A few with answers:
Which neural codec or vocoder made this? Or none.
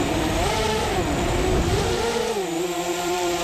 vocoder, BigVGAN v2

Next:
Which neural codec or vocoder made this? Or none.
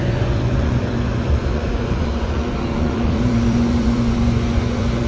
vocoder, Vocos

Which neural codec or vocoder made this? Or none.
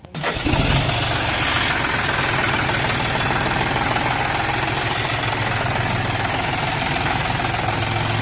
none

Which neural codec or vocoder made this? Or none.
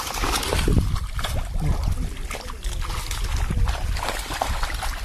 none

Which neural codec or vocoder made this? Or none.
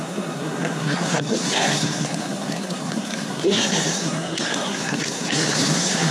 codec, SNAC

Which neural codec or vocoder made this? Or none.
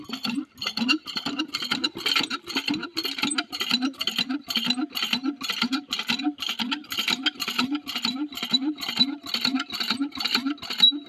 none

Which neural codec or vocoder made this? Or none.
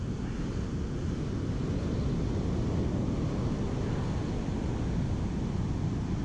none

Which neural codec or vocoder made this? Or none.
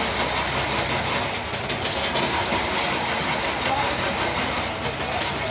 none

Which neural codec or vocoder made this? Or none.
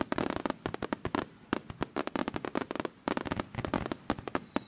none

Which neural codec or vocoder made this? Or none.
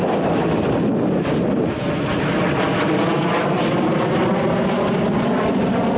none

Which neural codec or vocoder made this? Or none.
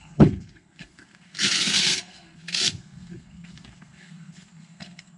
codec, SNAC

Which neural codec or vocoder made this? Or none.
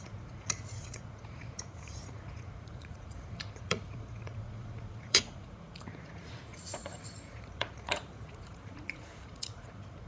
vocoder, Vocos